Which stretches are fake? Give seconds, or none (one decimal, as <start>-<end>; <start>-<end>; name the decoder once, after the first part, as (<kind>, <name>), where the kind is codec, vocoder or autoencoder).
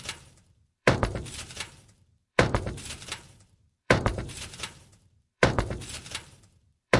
0.0-7.0 (vocoder, BigVGAN v2)